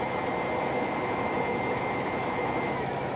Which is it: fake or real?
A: fake